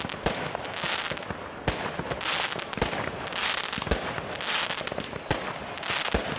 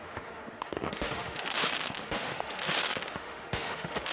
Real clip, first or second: first